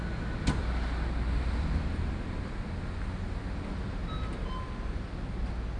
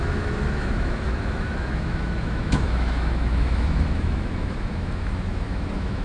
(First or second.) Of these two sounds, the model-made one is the second